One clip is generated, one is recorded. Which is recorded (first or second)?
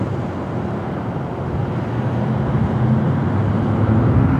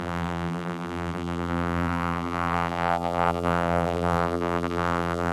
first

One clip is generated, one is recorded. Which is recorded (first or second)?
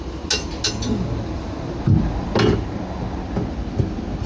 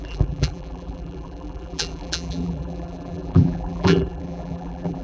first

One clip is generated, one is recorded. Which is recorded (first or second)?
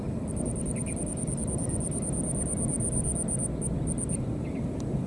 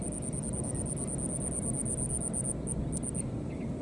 second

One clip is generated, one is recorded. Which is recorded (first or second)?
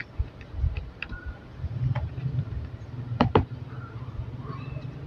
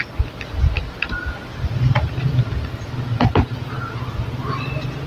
second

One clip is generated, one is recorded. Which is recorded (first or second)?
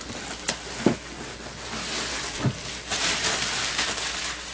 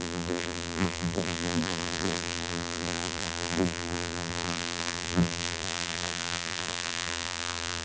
first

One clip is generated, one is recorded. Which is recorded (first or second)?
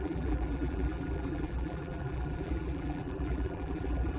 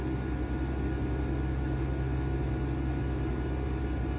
second